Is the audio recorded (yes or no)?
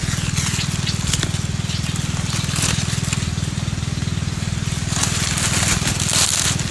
yes